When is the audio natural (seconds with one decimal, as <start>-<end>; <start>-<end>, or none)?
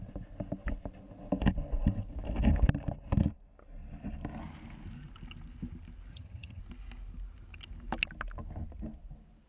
0.0-6.1; 6.6-9.5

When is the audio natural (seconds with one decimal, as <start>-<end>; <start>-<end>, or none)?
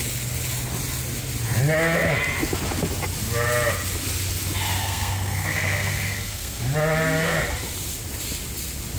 0.0-4.8; 6.6-9.0